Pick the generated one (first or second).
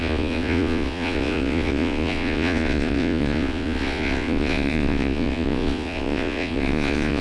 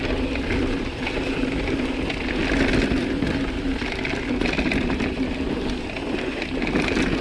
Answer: first